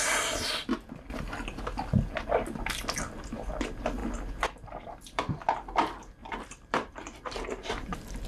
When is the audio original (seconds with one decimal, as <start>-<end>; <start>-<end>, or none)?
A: 0.0-4.0; 5.5-6.2; 7.9-8.3